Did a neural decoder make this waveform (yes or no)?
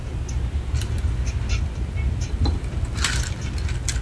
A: no